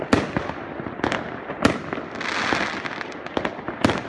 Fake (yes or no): no